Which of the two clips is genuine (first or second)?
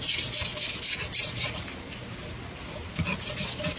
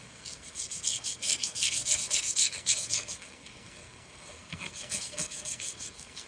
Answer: first